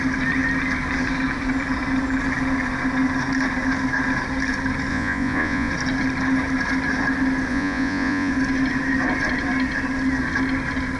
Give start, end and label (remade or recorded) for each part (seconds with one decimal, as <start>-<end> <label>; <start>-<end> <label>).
0.0-4.9 recorded; 4.9-5.7 remade; 5.7-7.5 recorded; 7.5-8.3 remade; 8.3-11.0 recorded